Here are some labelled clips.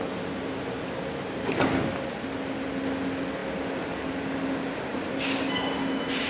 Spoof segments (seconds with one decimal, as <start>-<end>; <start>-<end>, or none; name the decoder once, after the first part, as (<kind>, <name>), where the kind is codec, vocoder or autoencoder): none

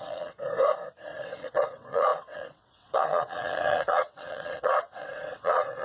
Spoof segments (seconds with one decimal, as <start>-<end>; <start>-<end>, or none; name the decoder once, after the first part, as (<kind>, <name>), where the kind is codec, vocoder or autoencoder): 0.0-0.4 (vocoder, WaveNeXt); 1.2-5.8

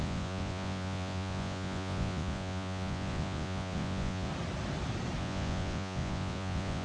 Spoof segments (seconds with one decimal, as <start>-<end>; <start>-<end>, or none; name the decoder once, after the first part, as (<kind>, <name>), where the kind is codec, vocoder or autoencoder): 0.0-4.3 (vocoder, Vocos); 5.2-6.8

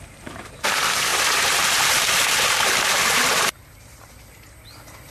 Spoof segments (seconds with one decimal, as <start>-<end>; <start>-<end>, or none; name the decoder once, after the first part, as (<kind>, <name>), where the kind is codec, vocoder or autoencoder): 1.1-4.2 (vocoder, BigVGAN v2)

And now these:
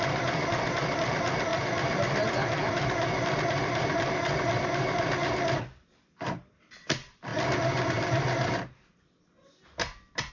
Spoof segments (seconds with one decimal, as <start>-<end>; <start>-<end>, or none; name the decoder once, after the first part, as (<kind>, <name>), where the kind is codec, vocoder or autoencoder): 0.0-10.3 (vocoder, BigVGAN v2)

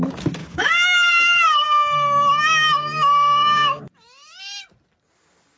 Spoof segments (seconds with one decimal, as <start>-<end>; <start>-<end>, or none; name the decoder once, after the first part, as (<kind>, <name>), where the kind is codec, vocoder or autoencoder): 0.4-3.8 (codec, DAC)